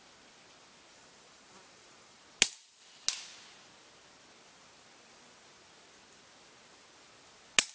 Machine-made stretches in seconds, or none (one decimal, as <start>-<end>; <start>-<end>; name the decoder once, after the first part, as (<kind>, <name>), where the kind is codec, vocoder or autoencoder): 0.9-2.2 (vocoder, BigVGAN v2)

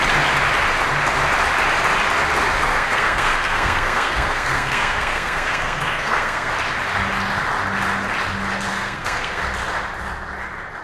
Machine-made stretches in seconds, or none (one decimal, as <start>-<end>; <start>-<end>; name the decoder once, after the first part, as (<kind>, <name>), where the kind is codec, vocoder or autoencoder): 2.7-6.5 (codec, SNAC); 8.7-9.4

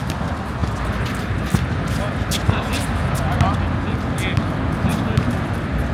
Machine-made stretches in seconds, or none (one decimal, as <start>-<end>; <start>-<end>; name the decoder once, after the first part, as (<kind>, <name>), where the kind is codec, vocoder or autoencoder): none

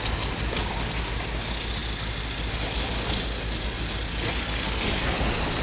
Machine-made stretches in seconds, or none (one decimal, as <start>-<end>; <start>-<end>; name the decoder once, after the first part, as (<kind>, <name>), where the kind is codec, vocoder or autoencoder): none

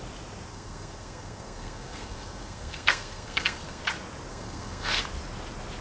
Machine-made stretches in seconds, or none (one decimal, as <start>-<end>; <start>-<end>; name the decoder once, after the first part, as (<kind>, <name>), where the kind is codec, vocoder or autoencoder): 0.5-3.8 (codec, SNAC); 4.3-5.0

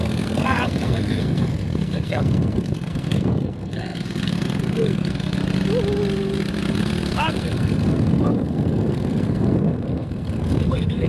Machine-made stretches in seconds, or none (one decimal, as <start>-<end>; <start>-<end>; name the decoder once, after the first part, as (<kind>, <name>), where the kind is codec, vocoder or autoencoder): 0.0-5.4 (codec, SNAC); 6.8-11.1

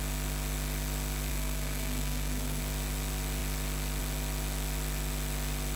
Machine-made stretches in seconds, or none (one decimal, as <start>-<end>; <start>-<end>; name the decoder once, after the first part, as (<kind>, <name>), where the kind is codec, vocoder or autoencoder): 1.3-2.6 (codec, SNAC)

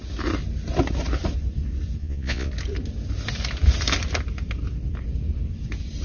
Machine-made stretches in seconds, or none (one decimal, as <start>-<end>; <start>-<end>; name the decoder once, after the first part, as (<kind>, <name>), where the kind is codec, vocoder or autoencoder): 2.0-2.5 (vocoder, Vocos)